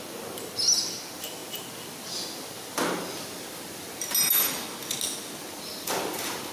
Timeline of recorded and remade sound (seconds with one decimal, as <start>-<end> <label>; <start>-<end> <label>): 0.0-5.7 recorded; 5.7-6.5 remade